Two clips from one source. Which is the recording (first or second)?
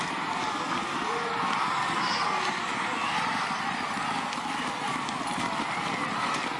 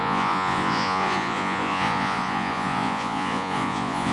first